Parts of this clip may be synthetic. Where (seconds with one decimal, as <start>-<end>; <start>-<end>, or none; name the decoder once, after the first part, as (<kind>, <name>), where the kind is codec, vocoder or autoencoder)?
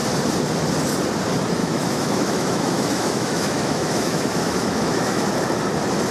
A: 1.6-5.3 (autoencoder, DAC-VAE)